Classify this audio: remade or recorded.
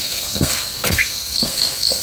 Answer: remade